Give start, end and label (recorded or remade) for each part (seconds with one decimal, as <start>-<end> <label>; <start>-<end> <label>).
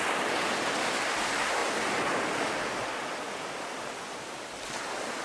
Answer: 0.0-5.2 recorded